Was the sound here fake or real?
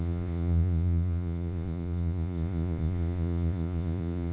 fake